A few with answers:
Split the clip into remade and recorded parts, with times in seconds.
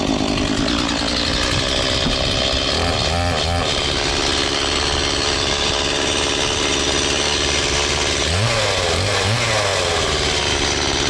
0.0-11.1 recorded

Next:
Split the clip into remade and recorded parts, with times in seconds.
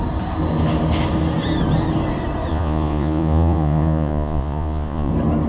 0.0-2.5 recorded; 2.5-5.1 remade; 5.1-5.5 recorded